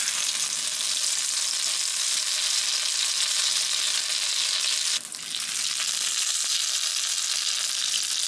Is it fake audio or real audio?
real